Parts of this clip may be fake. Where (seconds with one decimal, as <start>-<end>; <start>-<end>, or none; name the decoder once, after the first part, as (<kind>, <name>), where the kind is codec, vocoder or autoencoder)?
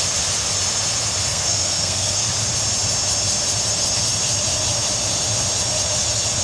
1.3-2.3 (codec, SNAC)